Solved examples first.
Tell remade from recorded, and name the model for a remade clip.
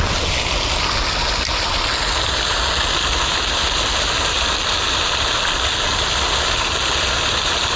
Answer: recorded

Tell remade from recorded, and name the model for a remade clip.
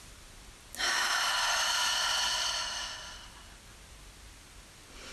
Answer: recorded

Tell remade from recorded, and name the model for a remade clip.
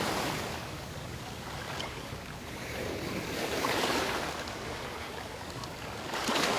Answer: remade, codec, DAC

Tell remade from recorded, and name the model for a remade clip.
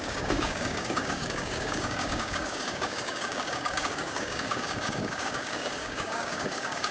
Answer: remade, codec, DAC